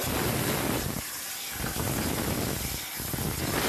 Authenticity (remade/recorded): recorded